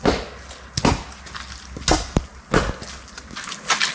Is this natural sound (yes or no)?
yes